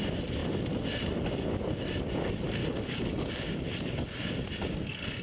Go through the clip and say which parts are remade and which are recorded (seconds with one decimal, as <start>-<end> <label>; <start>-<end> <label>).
0.0-2.6 recorded; 2.6-3.5 remade; 3.5-5.2 recorded